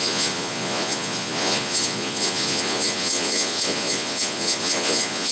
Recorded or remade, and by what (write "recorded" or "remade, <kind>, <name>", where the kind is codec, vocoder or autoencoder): remade, vocoder, Vocos